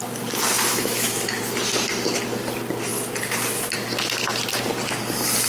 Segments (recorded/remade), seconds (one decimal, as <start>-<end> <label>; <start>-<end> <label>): 0.0-0.7 recorded; 0.7-1.4 remade; 1.4-5.5 recorded